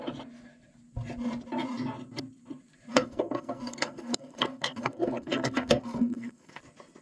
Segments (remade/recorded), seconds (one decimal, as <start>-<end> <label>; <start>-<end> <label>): 0.0-2.9 recorded; 2.9-6.6 remade; 6.6-7.0 recorded